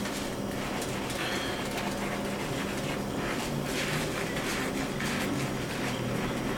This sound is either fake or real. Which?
real